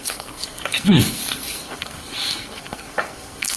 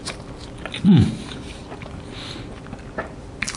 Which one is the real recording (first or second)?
second